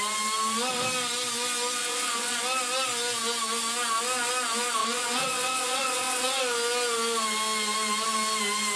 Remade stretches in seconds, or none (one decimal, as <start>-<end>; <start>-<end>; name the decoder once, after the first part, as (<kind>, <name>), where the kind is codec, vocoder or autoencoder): 1.8-2.4 (vocoder, WaveNeXt); 4.8-6.4